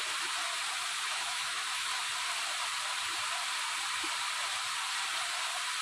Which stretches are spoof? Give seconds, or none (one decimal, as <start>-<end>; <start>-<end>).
1.1-1.9